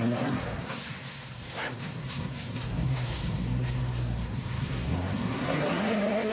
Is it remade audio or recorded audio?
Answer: remade